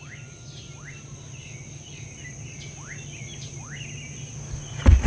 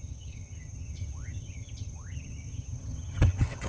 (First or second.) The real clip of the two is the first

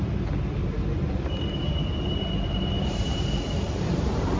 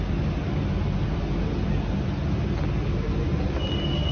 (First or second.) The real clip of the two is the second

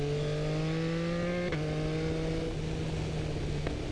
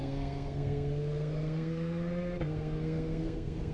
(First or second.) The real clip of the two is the first